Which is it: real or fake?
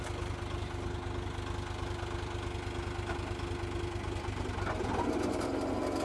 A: real